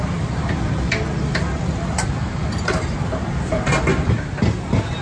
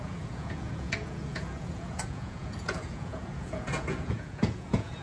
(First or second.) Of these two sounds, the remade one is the second